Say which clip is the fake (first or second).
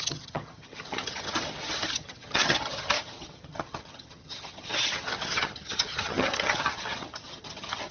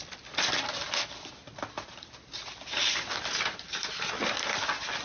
first